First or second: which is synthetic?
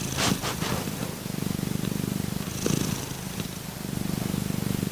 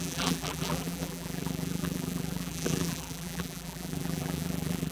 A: second